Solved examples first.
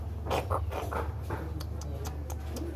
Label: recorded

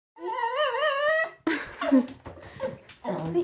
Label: recorded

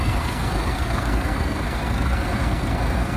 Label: remade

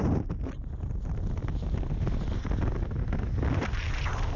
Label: recorded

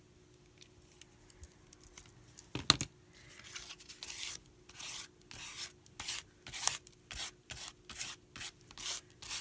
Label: recorded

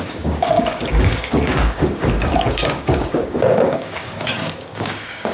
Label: remade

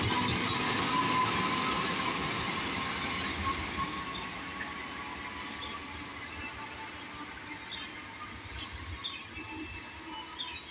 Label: recorded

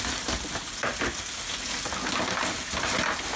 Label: recorded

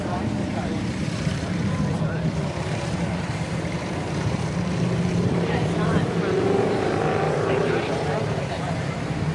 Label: remade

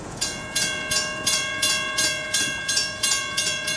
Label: remade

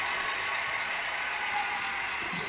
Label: remade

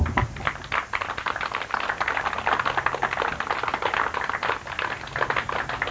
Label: recorded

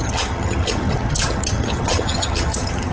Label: remade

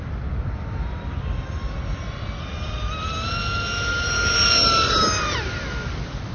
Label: recorded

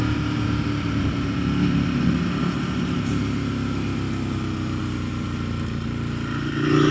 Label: recorded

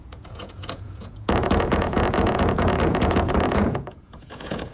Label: remade